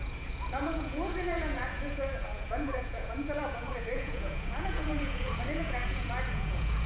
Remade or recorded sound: remade